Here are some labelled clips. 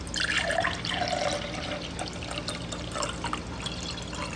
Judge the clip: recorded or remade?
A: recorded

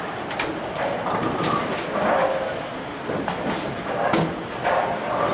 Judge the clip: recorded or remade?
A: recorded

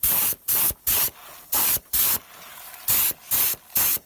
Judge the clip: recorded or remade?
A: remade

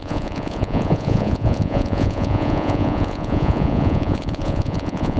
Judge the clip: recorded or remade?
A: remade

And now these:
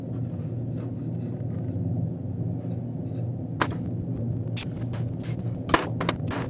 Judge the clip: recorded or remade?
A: recorded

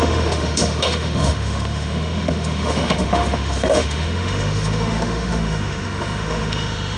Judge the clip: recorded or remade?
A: remade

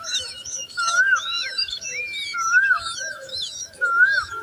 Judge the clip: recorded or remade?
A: remade